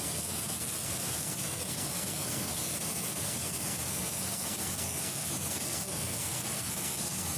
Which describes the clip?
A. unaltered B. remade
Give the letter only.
B